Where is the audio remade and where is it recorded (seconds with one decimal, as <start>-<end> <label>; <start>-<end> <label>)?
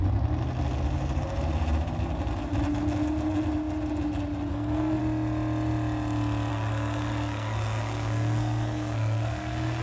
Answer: 0.0-4.5 recorded; 4.5-5.0 remade; 5.0-6.5 recorded; 6.5-9.8 remade